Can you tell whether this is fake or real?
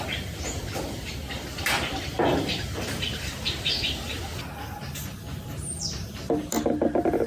real